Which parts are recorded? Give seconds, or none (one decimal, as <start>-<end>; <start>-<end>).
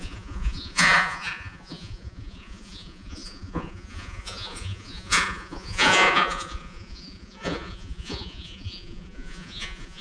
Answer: none